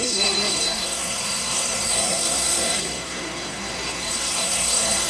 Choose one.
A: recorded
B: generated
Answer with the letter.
B